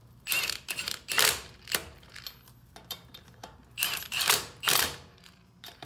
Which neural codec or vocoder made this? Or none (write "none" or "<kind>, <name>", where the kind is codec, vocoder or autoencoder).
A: vocoder, BigVGAN v2